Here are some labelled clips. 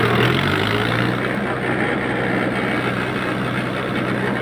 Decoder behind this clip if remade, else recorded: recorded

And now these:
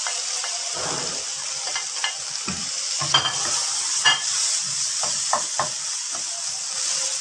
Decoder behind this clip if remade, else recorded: recorded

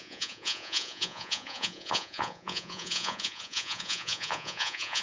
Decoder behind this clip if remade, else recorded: remade, vocoder, Vocos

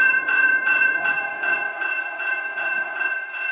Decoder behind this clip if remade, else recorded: remade, vocoder, Vocos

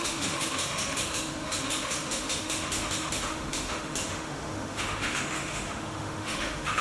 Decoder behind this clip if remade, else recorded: remade, autoencoder, DAC-VAE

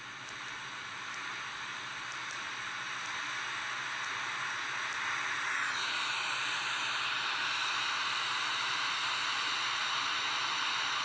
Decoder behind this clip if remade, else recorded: recorded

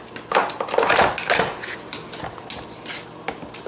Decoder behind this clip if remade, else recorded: recorded